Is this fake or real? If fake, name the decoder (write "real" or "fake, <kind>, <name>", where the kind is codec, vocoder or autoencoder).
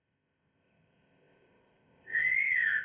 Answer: fake, codec, ZipCodec